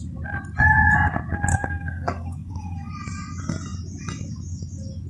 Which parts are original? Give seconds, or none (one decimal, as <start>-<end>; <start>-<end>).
0.0-1.5; 2.9-5.1